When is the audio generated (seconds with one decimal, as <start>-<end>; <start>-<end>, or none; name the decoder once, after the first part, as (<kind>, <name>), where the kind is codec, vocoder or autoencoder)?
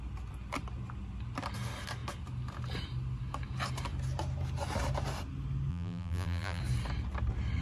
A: 5.7-6.6 (vocoder, BigVGAN v2)